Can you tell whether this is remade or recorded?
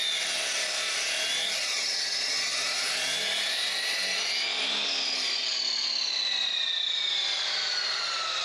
recorded